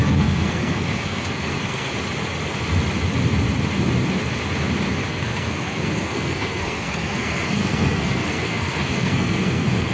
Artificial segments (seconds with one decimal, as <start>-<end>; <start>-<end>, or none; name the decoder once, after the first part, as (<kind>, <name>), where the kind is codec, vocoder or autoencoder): 0.0-1.9 (codec, SNAC); 5.1-9.9